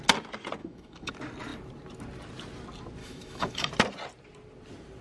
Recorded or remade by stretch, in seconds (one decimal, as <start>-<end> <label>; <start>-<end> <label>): 0.0-0.6 recorded; 0.6-1.1 remade; 1.1-3.0 recorded; 3.0-3.7 remade; 3.7-5.0 recorded